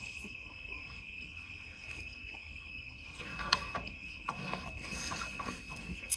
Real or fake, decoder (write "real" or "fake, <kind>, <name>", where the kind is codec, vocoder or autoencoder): fake, codec, SNAC